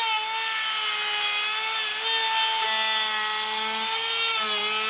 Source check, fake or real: real